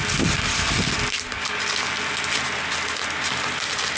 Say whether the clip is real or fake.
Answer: real